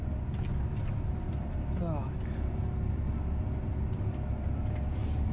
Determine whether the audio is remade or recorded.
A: recorded